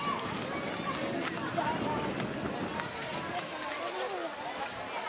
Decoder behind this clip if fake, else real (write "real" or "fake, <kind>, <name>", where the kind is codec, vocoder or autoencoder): real